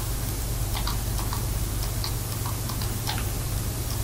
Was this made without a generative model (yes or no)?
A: yes